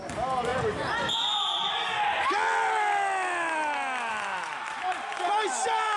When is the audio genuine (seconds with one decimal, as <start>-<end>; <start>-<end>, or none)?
0.5-4.1